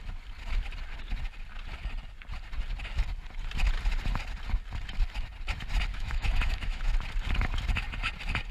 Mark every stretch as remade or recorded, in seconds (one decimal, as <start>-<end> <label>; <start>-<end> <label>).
0.0-5.9 recorded; 5.9-6.8 remade; 6.8-8.5 recorded